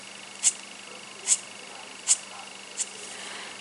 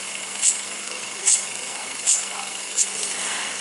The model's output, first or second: second